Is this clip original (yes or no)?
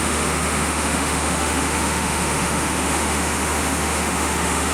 no